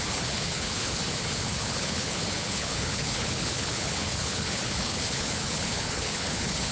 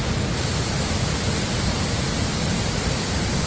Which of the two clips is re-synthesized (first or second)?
first